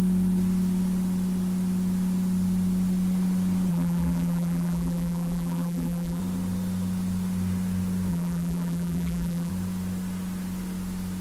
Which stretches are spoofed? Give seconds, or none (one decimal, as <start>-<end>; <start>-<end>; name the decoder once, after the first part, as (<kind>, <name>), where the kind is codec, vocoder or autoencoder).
3.7-6.2 (vocoder, BigVGAN v2); 8.1-9.5